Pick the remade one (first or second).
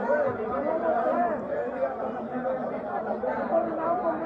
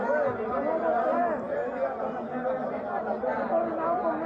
first